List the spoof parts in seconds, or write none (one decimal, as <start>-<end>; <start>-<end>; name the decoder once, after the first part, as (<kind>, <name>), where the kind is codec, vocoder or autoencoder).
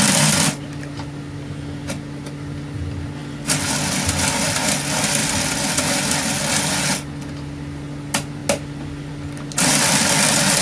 none